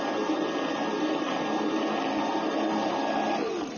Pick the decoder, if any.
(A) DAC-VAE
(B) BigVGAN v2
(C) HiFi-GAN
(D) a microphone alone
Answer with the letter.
D